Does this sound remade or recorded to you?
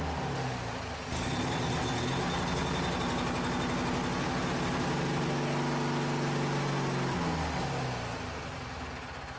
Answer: recorded